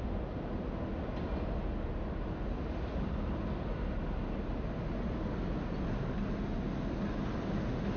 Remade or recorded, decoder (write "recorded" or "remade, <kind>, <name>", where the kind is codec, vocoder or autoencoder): recorded